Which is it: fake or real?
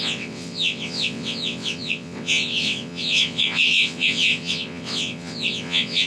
fake